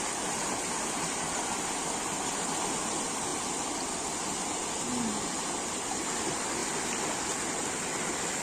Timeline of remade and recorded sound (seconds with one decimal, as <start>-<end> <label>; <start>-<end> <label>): 0.0-8.4 recorded